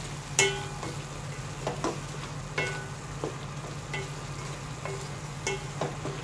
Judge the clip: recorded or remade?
recorded